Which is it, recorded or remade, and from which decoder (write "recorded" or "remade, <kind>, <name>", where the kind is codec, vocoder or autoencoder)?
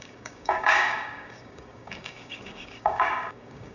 remade, codec, DAC